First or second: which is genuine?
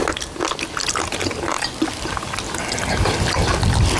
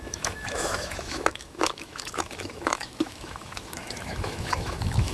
first